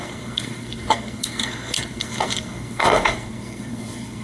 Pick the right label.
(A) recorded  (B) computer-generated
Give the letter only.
B